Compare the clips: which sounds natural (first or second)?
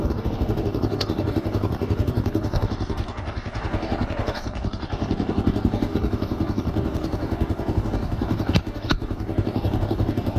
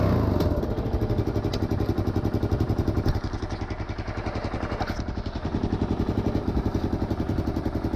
second